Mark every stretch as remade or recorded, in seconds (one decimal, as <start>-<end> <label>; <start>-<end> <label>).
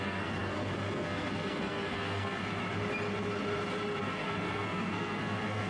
0.0-2.6 remade; 2.6-4.0 recorded; 4.0-5.7 remade